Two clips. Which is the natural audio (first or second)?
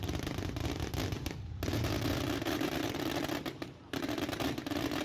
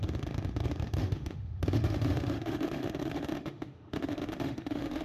first